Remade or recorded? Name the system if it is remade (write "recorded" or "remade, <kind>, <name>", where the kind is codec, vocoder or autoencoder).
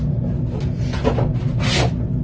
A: recorded